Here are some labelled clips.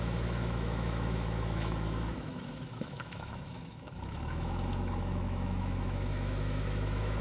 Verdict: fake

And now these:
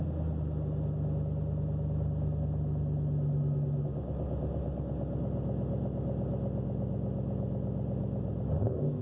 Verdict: real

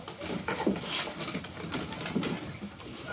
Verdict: real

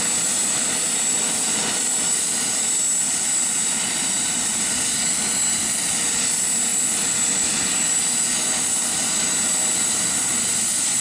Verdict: real